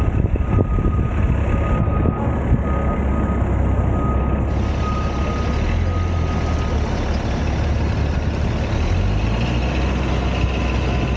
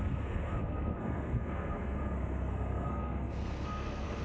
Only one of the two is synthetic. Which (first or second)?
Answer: second